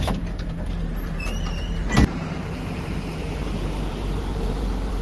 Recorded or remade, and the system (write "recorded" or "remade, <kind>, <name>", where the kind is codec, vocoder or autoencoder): remade, vocoder, BigVGAN v2